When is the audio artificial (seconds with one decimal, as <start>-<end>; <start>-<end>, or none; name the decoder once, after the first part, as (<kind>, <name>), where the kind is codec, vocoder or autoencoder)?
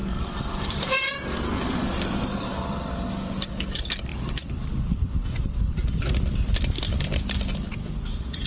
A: 0.0-1.1 (vocoder, BigVGAN v2); 4.1-7.3